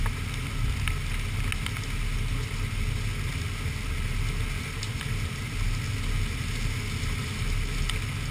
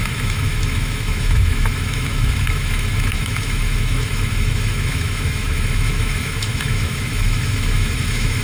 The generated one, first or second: second